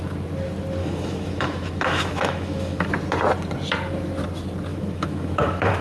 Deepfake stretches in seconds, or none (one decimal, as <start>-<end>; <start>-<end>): 0.8-2.9; 4.7-5.8